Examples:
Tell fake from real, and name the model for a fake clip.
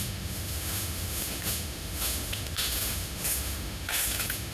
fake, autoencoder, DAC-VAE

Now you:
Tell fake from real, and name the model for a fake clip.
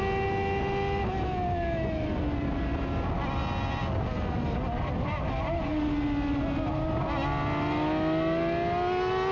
real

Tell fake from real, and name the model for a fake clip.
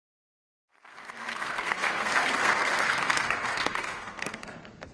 fake, codec, SNAC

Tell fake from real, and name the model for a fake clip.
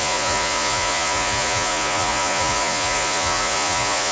fake, vocoder, Vocos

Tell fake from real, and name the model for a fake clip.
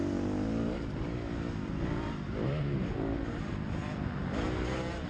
real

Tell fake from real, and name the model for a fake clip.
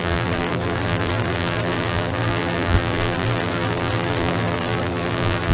fake, vocoder, BigVGAN v2